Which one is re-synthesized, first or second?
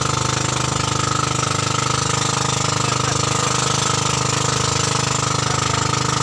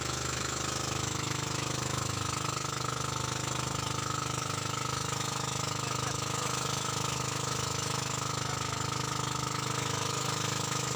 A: second